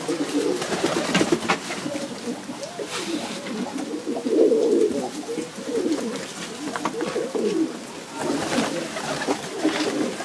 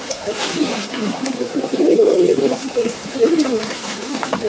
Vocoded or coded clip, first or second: second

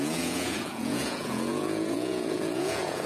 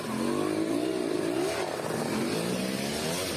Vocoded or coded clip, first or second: first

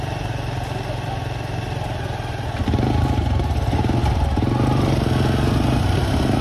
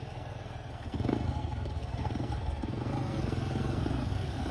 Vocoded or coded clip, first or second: second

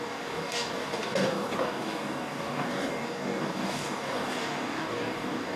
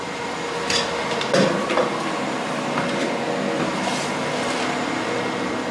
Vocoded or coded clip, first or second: first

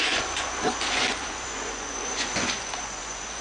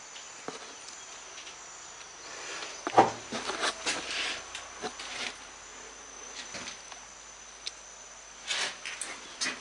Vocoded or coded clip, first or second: first